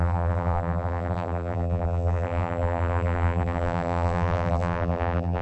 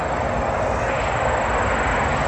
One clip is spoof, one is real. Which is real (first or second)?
second